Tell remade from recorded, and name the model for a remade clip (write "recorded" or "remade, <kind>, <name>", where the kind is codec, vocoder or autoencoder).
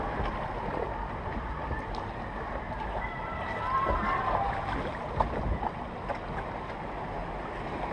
recorded